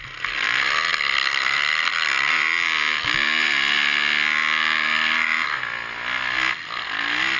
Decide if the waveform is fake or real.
real